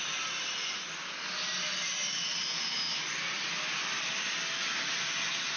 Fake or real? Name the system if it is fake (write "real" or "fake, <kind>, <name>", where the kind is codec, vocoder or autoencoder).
real